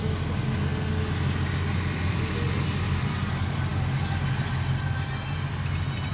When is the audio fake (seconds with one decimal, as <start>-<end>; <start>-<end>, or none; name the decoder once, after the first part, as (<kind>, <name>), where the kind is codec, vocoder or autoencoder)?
none